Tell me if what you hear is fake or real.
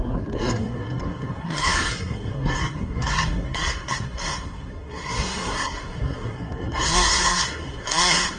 fake